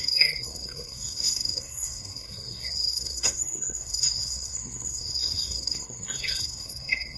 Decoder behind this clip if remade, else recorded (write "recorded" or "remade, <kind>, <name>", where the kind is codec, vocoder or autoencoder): remade, codec, SNAC